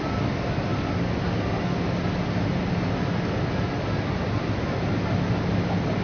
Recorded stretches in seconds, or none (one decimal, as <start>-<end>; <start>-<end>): 0.0-6.0